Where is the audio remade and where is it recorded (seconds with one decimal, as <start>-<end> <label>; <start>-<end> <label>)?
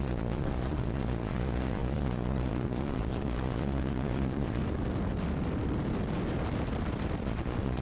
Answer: 0.0-4.6 remade; 4.6-7.2 recorded; 7.2-7.8 remade